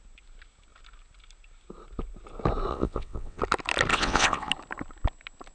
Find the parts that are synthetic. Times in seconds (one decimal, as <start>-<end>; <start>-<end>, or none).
2.7-3.4; 3.9-4.5